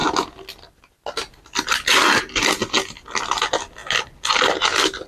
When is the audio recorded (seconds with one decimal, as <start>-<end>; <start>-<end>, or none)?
0.0-5.1